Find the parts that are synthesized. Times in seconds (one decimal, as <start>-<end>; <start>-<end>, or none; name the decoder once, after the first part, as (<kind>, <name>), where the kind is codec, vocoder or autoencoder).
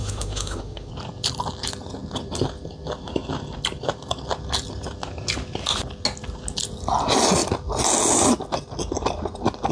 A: 0.0-0.9 (autoencoder, DAC-VAE)